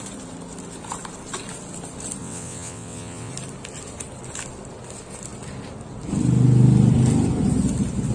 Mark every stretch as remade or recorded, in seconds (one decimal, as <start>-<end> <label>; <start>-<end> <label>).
0.0-2.2 recorded; 2.2-3.3 remade; 3.3-8.1 recorded